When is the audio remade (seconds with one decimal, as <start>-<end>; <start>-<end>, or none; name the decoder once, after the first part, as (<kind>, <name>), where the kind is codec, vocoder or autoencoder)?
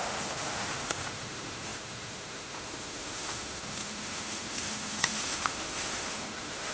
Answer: 0.0-6.7 (autoencoder, DAC-VAE)